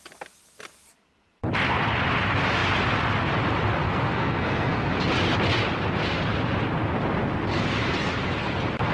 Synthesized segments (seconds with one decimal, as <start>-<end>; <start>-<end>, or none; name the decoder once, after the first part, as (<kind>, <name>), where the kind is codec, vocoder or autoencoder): 3.8-4.9 (codec, SNAC)